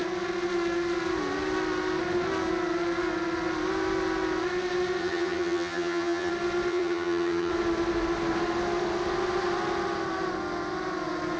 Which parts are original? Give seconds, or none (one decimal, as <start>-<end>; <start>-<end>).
0.0-5.0; 6.3-6.7; 7.5-11.4